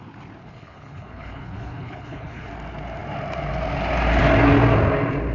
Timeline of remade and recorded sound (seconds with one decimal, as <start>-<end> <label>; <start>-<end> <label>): 0.0-0.4 recorded; 0.4-2.5 remade; 2.5-5.3 recorded